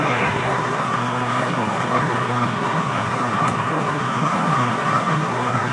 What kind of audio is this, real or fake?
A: fake